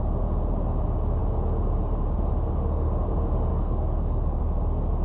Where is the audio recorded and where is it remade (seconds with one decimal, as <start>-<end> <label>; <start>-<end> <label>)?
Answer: 0.0-3.5 recorded; 3.5-4.4 remade; 4.4-5.0 recorded